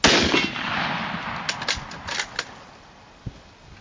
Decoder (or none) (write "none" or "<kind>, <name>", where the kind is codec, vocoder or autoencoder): none